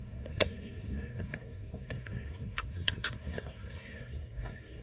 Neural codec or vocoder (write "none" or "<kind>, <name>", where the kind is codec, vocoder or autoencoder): codec, SNAC